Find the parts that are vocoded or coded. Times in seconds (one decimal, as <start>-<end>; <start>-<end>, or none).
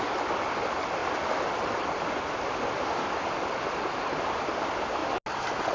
none